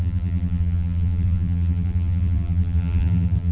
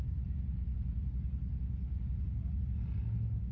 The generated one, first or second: first